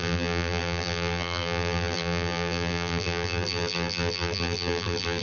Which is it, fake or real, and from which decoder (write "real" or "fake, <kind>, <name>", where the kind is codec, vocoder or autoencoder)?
fake, vocoder, BigVGAN v2